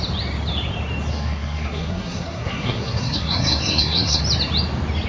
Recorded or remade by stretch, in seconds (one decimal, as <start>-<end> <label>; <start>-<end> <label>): 0.0-1.1 recorded; 1.1-4.2 remade; 4.2-5.1 recorded